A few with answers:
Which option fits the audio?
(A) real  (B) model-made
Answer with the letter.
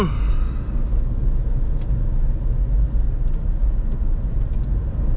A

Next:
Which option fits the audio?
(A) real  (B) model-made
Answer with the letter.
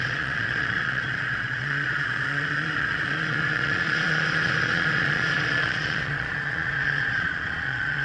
B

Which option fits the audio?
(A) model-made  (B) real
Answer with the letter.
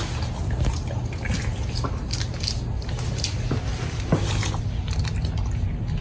B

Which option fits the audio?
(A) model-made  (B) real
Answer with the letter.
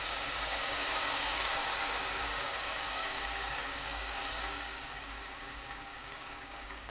A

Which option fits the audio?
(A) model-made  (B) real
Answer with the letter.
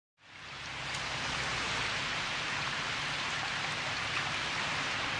B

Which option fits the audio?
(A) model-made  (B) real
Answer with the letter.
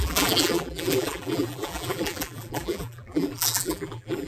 A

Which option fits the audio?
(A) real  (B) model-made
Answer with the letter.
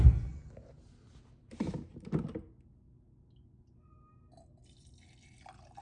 A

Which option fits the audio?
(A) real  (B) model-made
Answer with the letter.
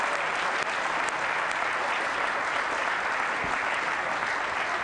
A